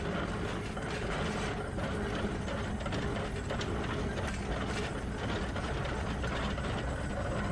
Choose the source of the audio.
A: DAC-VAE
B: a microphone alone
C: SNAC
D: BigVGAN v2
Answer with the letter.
B